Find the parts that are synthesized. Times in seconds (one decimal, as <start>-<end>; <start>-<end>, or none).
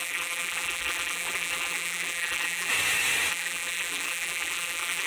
0.0-2.7; 3.3-5.1